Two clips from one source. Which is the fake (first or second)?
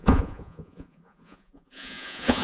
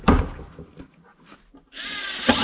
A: first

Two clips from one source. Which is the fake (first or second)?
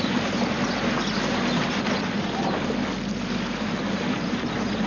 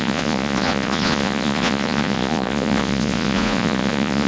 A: second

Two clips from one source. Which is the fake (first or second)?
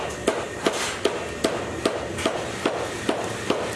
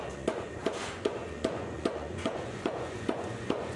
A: second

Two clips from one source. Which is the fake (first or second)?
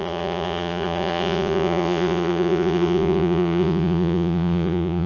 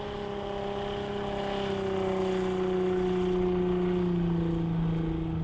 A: first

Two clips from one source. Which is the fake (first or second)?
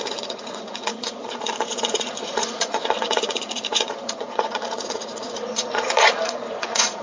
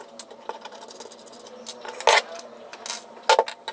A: first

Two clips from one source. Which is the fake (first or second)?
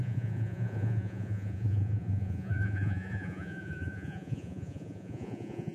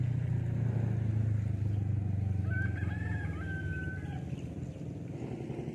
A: first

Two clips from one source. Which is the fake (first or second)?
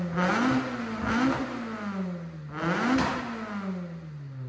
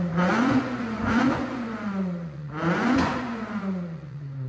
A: second